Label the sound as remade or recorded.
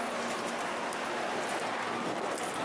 recorded